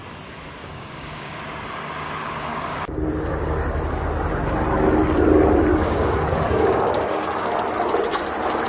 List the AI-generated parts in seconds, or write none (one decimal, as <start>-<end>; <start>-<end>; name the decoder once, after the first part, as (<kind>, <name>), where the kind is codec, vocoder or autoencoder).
0.6-1.4 (codec, DAC); 2.5-3.1; 5.7-7.5